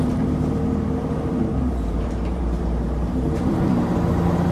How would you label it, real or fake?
fake